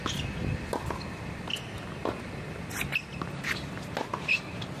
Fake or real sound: real